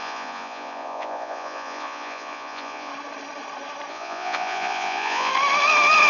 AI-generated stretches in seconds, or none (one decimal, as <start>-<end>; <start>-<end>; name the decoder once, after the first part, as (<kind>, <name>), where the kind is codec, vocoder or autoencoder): 0.0-2.9 (vocoder, Vocos); 3.9-5.3